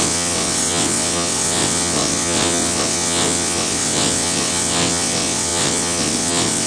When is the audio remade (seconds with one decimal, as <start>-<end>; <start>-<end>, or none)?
0.0-6.7